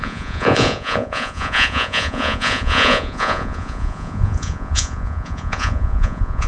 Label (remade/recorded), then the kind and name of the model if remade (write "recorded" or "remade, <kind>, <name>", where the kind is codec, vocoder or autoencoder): remade, vocoder, Vocos